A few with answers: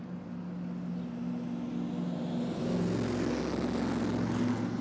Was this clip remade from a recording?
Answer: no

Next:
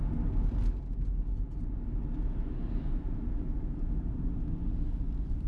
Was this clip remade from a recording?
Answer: no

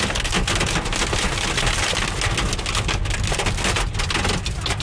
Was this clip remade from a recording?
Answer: no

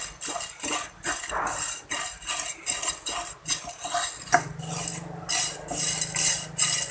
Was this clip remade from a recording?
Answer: no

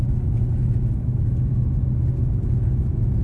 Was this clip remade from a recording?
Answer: no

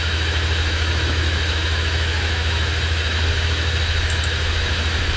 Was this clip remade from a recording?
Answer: yes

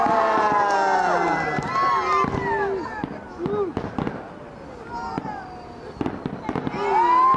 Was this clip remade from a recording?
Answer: no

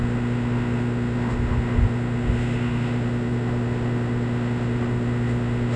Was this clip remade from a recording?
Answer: yes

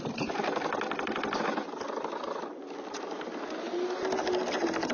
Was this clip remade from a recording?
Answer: no